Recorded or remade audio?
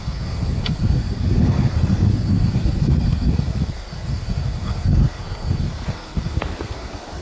remade